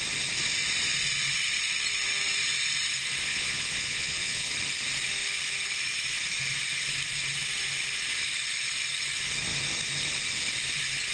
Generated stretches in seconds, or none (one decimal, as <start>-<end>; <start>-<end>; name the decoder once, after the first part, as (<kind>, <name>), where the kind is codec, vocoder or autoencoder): 3.3-4.5 (vocoder, Vocos)